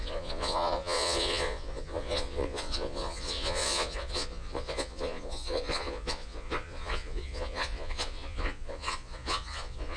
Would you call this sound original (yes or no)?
no